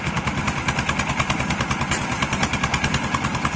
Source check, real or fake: real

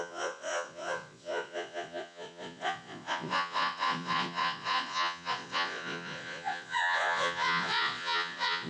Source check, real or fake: fake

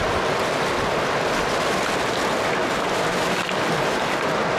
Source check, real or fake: real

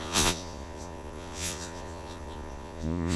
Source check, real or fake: fake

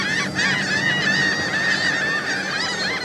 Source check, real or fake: real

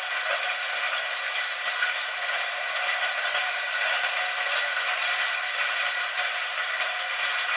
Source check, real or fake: real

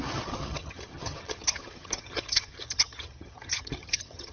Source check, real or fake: fake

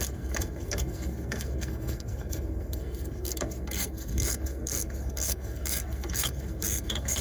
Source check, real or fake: fake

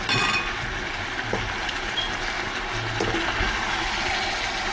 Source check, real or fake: real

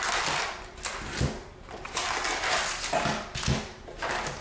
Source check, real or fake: real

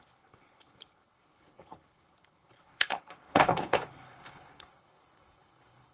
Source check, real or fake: fake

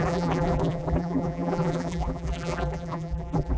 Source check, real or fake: fake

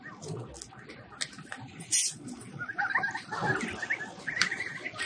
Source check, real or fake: real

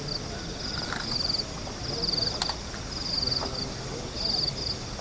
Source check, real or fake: real